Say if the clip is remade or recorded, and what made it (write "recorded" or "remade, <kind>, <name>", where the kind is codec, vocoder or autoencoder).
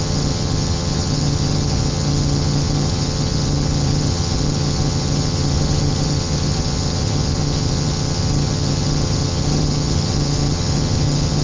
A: remade, vocoder, HiFi-GAN